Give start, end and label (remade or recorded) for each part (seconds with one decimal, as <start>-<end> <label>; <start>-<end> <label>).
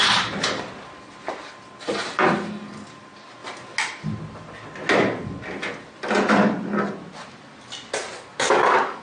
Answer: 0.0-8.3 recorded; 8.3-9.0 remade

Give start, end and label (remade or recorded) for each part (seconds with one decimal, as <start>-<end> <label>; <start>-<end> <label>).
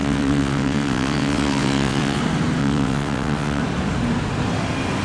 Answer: 0.0-2.2 remade; 2.2-2.6 recorded; 2.6-3.6 remade; 3.6-5.0 recorded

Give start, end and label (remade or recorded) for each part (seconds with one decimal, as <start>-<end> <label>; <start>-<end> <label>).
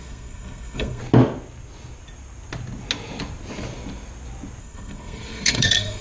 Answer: 0.0-1.0 remade; 1.0-4.6 recorded; 4.6-6.0 remade